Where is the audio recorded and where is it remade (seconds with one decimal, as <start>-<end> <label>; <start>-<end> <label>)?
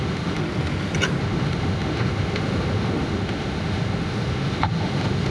0.0-0.4 remade; 0.4-1.2 recorded; 1.2-5.3 remade